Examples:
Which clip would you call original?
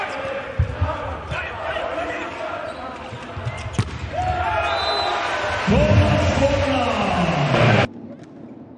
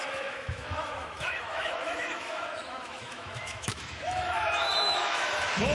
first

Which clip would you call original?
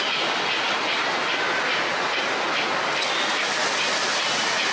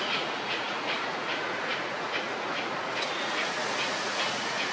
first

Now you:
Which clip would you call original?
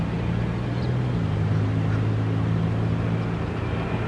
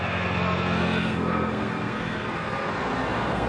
first